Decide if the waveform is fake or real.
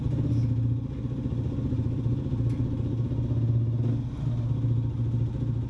real